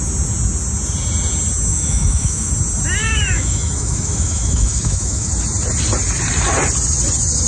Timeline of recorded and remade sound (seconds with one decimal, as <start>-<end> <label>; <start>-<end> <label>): 0.0-1.7 recorded; 1.7-2.5 remade; 2.5-3.0 recorded; 3.0-5.3 remade; 5.3-7.5 recorded